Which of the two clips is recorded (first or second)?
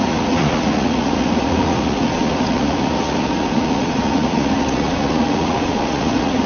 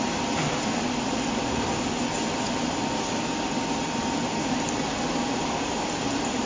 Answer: second